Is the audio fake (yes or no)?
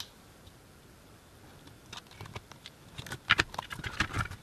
no